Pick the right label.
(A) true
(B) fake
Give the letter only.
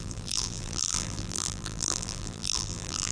B